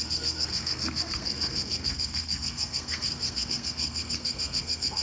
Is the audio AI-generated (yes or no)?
yes